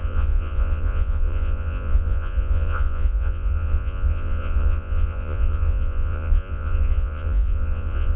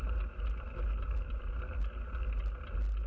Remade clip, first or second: first